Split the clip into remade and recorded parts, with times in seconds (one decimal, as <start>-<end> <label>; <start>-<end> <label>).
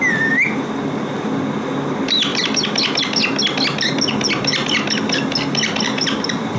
0.0-6.6 recorded